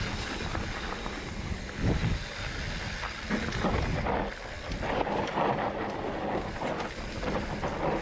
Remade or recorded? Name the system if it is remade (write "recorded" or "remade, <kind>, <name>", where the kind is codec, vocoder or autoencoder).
recorded